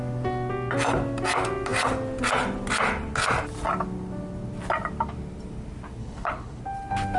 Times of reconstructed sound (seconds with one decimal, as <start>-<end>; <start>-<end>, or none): 6.0-6.6